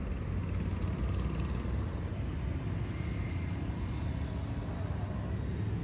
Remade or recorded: recorded